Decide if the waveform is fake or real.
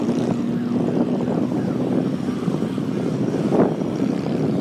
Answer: real